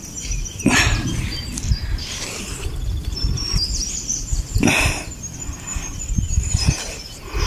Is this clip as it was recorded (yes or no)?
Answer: yes